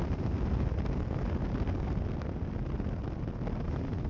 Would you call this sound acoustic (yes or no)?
yes